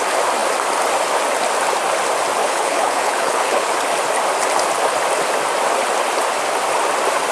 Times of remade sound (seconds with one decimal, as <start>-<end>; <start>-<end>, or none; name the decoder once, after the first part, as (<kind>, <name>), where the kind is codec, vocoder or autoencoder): 2.4-3.7 (codec, HILCodec)